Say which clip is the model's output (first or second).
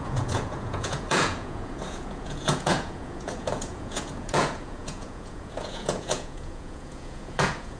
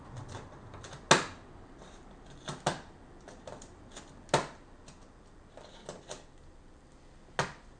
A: first